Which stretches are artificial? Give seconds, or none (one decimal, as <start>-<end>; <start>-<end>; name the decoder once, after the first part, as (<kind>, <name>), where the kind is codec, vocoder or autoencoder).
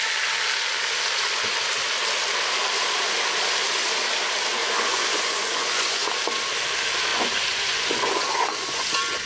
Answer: 4.6-6.0 (vocoder, Vocos); 7.1-9.3